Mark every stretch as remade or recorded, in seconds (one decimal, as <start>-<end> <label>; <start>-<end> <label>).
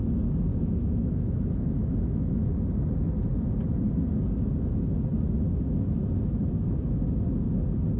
0.0-0.5 recorded; 0.5-2.5 remade; 2.5-8.0 recorded